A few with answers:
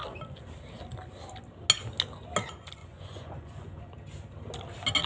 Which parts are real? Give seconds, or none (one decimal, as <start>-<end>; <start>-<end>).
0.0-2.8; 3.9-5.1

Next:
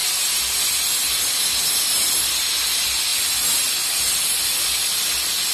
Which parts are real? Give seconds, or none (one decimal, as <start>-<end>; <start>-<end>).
0.0-5.5

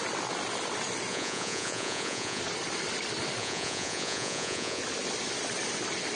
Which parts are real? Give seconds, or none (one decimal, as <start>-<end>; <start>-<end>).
0.0-1.1; 2.4-3.4; 4.8-6.2

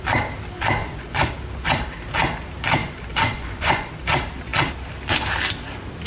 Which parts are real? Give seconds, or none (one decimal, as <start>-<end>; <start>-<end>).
0.0-0.8; 1.3-2.8; 3.9-6.1

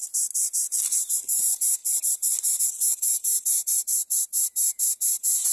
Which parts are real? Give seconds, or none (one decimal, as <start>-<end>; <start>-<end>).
0.0-1.4; 1.8-2.6

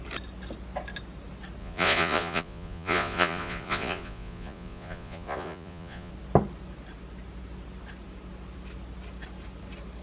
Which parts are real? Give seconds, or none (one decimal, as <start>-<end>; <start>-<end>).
0.0-1.6; 6.1-10.0